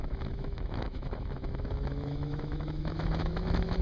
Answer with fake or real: fake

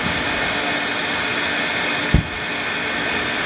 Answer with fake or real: real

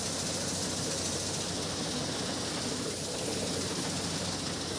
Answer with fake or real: real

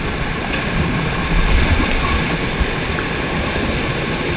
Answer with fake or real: real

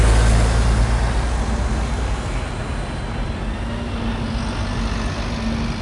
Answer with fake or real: real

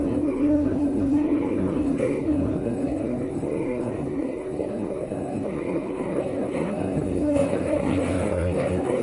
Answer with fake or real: fake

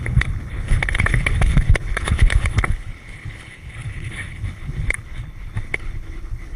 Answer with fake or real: fake